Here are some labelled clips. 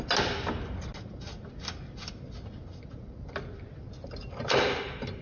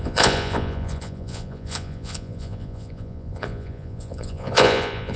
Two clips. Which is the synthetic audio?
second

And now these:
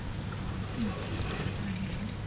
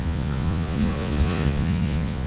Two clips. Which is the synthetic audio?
second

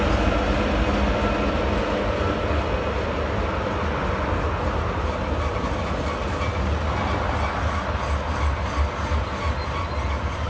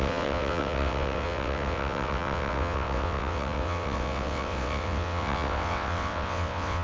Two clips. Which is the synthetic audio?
second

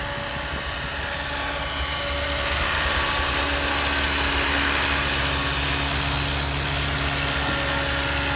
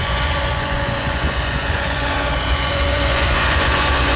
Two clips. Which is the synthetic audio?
second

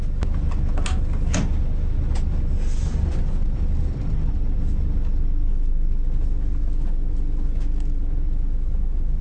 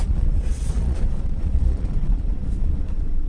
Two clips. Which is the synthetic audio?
second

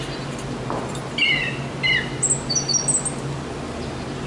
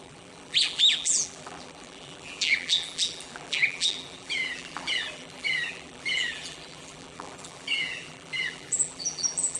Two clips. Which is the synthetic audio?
second